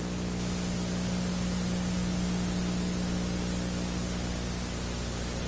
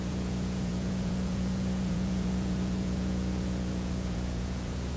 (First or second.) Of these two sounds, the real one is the first